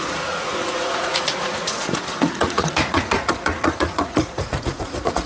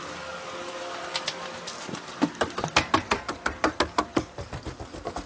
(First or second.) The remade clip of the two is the first